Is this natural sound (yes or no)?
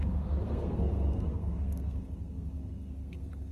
no